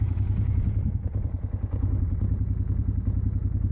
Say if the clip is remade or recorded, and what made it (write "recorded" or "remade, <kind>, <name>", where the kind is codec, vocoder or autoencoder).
remade, vocoder, Vocos